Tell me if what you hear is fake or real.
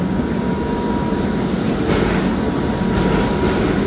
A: real